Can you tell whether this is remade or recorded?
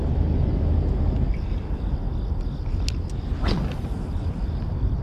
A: recorded